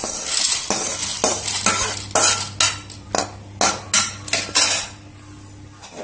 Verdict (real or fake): real